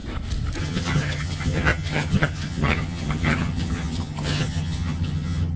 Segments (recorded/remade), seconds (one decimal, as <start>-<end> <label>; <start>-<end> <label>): 0.0-0.6 recorded; 0.6-5.6 remade